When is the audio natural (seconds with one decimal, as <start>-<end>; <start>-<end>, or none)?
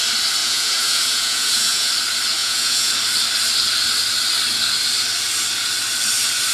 0.0-0.4; 1.9-2.4; 2.9-6.5